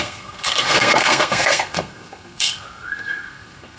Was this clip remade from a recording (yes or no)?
yes